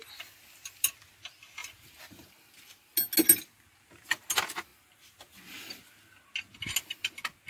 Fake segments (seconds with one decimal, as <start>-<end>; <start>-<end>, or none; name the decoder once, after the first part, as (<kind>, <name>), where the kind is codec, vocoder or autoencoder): none